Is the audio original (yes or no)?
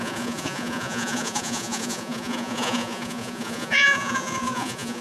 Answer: no